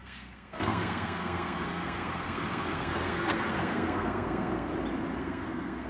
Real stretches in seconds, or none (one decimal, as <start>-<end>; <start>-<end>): 4.7-5.2